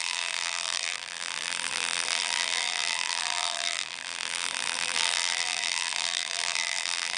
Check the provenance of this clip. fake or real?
fake